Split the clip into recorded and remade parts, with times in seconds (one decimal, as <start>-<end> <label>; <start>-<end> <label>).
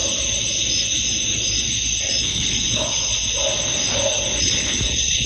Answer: 0.0-2.2 recorded; 2.2-3.1 remade; 3.1-4.4 recorded; 4.4-5.3 remade